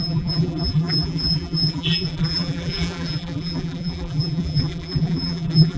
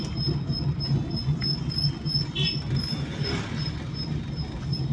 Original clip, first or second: second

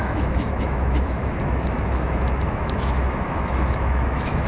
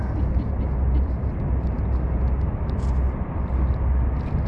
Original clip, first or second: second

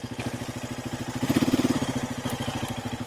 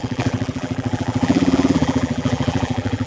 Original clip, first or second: first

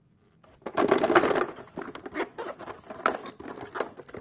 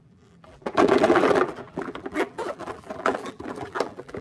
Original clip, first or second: first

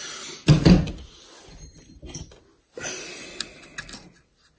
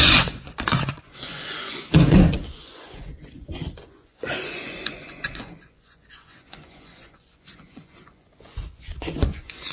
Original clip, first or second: first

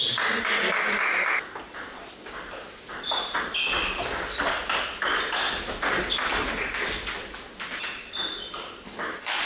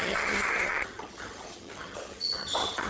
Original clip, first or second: first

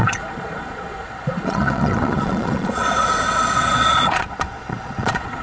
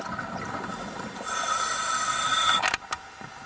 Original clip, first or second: second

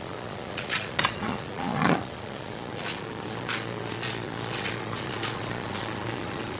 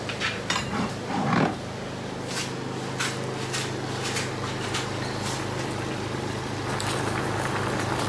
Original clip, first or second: second